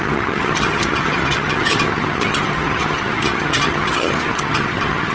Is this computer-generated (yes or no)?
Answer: yes